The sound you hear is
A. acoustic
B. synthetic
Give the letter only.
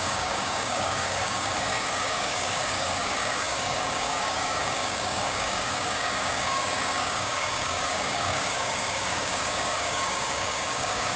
B